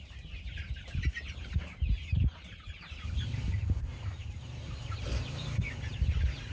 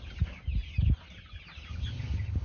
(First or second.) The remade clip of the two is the first